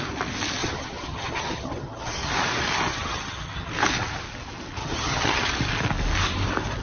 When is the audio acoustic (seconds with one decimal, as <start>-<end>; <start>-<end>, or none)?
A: 0.0-0.6; 2.3-2.9; 3.7-4.8; 5.4-6.8